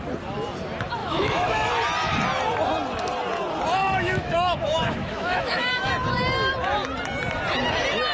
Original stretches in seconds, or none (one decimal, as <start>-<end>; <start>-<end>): 0.0-1.0; 1.7-3.8; 5.9-8.1